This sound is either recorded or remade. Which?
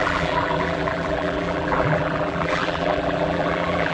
remade